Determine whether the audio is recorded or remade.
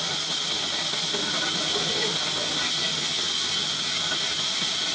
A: recorded